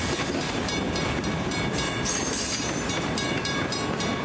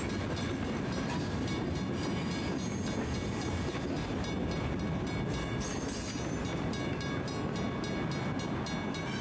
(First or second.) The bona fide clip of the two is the second